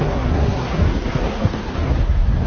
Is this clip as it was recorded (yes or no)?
no